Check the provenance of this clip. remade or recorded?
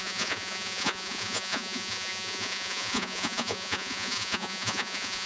remade